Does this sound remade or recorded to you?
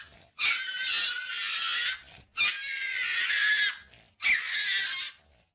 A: recorded